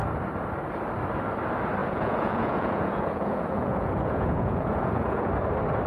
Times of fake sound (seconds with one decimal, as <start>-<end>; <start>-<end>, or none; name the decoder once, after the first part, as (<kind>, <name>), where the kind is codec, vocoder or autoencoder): 1.8-5.3 (vocoder, Vocos)

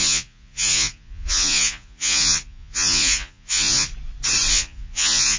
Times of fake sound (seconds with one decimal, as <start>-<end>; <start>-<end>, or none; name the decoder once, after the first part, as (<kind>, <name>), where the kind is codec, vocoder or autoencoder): 0.0-3.9 (vocoder, Vocos); 4.5-5.4

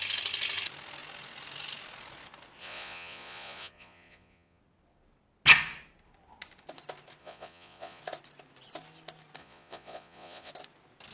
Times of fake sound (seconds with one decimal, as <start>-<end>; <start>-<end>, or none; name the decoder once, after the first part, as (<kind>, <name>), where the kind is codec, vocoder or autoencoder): 2.6-4.6 (vocoder, Vocos); 7.2-8.0; 9.4-10.5

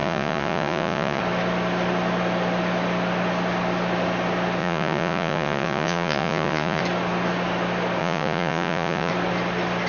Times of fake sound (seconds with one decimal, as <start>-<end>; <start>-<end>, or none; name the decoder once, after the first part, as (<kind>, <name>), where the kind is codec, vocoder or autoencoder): 0.0-1.2 (vocoder, Vocos); 4.6-6.8; 8.0-9.1

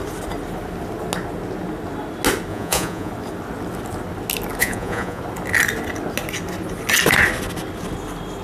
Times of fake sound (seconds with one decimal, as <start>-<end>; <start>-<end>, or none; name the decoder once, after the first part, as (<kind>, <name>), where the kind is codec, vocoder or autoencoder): 2.5-3.1 (vocoder, Vocos); 4.6-5.2

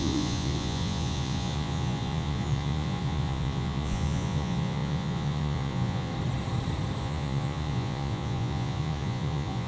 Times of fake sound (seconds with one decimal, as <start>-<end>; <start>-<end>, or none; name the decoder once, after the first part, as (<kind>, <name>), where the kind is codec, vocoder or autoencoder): 0.0-6.1 (vocoder, Vocos); 7.0-9.7